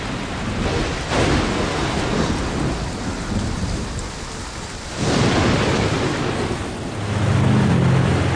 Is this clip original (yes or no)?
yes